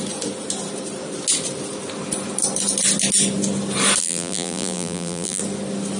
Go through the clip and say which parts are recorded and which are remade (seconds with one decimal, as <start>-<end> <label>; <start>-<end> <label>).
0.0-4.0 recorded; 4.0-5.4 remade; 5.4-6.0 recorded